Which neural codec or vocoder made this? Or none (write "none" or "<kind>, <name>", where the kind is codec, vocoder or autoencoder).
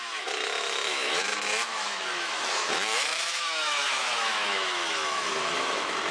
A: autoencoder, DAC-VAE